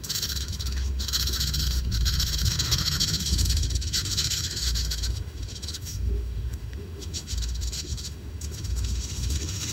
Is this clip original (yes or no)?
no